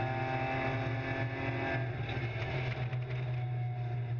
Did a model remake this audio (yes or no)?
no